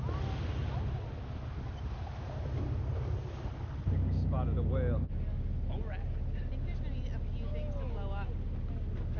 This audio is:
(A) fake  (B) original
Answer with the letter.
B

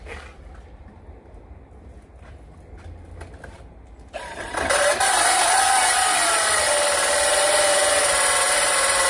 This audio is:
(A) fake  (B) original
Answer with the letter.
B